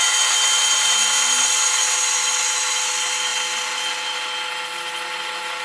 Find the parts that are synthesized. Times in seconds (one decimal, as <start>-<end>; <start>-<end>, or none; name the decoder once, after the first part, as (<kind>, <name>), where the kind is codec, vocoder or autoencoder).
none